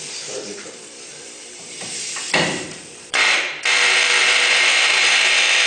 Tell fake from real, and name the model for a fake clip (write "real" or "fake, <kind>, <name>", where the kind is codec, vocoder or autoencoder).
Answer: fake, vocoder, BigVGAN v2